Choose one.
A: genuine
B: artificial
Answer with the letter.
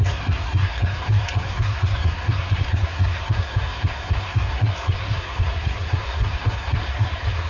B